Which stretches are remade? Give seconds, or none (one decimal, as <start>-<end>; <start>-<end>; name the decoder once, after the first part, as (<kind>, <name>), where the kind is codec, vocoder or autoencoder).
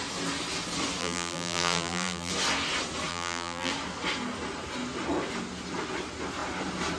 1.0-2.3 (vocoder, BigVGAN v2); 3.1-3.7